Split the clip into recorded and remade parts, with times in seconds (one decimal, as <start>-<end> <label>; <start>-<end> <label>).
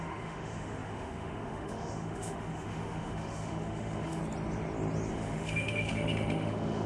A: 0.0-4.2 remade; 4.2-5.1 recorded; 5.1-6.9 remade